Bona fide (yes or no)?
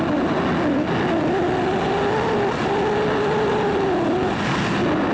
yes